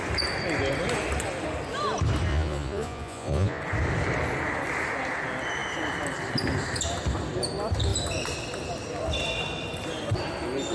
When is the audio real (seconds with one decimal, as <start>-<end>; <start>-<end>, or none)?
0.0-2.3; 3.6-10.7